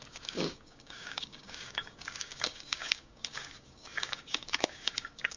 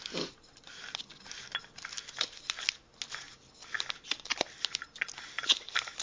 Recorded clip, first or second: second